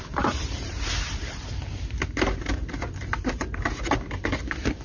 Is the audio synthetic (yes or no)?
yes